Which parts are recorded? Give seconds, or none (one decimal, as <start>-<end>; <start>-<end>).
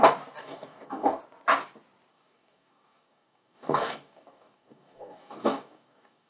0.0-0.4; 1.2-2.1